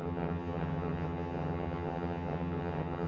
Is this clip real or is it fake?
fake